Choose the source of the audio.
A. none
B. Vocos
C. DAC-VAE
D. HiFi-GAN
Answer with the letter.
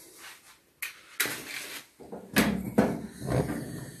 A